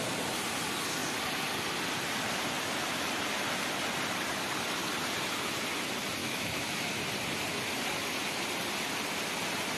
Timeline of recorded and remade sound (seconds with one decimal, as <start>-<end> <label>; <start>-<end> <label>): 0.0-6.2 recorded; 6.2-7.0 remade; 7.0-9.8 recorded